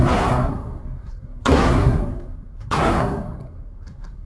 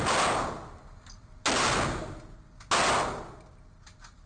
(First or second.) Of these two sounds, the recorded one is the second